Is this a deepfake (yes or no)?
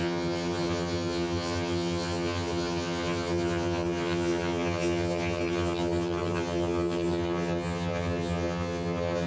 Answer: yes